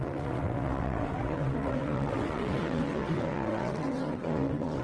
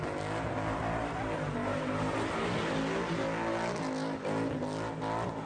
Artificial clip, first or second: first